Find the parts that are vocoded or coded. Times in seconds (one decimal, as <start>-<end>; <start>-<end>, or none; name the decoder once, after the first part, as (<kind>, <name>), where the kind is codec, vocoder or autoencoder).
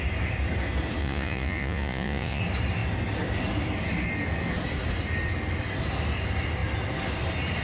1.0-2.4 (vocoder, Vocos)